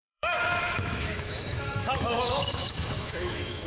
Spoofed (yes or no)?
yes